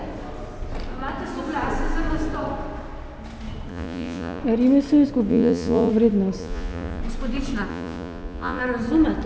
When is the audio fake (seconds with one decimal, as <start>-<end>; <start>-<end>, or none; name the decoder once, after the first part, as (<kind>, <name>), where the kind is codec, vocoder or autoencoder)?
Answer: 3.7-4.4 (vocoder, Vocos); 5.3-5.9; 6.4-7.0; 7.7-8.6

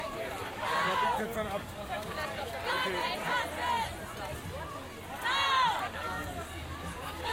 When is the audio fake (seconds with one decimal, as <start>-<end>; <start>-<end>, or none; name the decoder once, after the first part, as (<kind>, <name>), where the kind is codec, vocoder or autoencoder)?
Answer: 0.0-2.6 (codec, DAC); 5.8-7.3

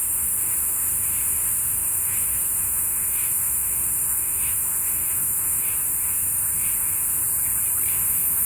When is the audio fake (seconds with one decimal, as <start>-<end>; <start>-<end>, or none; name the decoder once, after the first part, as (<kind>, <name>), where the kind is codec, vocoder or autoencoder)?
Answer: 0.0-7.2 (autoencoder, DAC-VAE); 7.9-8.5